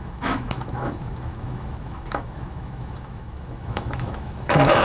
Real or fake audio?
fake